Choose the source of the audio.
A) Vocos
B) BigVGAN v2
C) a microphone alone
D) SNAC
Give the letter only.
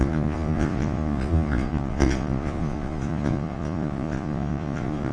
A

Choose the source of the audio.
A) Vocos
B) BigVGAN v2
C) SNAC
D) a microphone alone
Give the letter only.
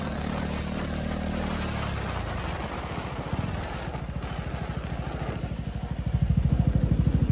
D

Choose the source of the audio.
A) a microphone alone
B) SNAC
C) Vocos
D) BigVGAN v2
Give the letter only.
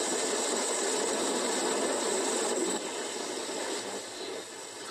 A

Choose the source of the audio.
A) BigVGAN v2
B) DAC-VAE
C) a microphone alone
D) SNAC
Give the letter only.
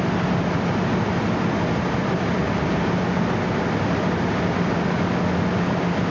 C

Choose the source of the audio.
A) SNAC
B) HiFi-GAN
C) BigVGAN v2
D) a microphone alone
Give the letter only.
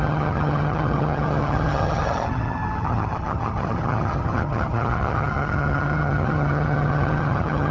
B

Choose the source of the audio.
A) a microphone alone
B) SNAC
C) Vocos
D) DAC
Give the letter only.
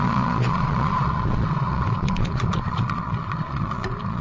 C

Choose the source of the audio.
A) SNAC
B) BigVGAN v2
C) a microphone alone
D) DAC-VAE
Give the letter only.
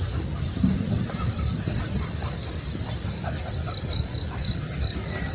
B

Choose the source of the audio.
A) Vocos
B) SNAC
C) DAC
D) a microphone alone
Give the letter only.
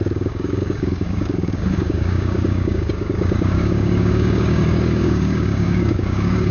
C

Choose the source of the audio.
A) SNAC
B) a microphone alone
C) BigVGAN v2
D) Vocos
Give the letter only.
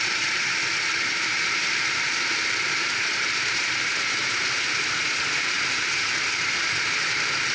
C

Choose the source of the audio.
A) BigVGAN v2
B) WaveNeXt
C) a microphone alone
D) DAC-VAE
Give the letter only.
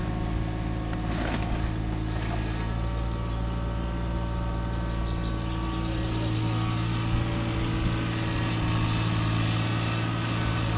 C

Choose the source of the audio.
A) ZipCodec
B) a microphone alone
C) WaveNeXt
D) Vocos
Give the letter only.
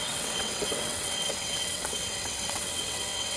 C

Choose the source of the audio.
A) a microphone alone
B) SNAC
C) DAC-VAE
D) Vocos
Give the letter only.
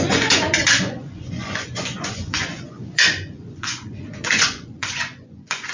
D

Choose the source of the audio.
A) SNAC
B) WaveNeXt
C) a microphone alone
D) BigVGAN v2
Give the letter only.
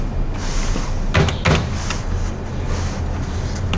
C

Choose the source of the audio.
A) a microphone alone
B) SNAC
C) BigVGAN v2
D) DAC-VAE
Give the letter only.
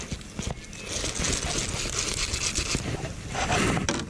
A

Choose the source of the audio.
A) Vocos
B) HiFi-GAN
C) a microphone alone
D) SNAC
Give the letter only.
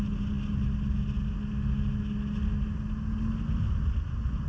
C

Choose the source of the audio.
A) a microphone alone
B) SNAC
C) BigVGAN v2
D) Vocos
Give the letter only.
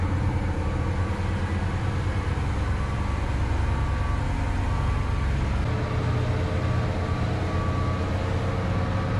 A